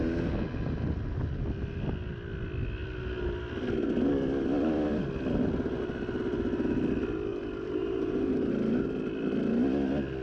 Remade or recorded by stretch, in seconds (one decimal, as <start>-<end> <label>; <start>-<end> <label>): 0.0-7.3 recorded; 7.3-8.5 remade; 8.5-10.2 recorded